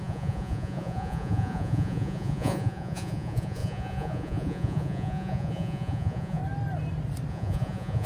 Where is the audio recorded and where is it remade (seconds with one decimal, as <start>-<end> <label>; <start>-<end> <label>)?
0.0-6.4 remade; 6.4-7.3 recorded; 7.3-8.1 remade